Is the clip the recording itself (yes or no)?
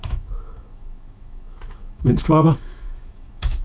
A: no